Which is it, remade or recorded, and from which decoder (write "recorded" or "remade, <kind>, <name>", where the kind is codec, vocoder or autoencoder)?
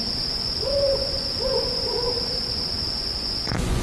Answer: remade, vocoder, Vocos